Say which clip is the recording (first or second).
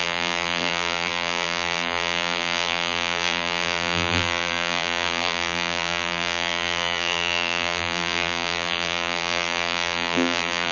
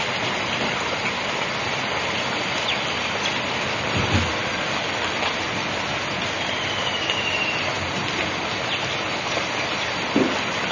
second